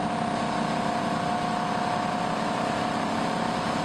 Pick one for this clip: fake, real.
real